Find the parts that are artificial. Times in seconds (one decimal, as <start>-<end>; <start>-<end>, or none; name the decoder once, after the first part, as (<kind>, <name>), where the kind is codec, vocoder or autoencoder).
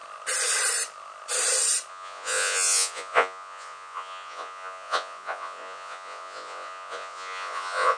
1.9-8.0 (vocoder, Vocos)